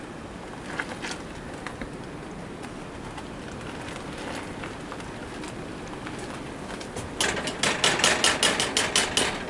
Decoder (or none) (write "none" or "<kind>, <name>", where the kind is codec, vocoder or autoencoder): none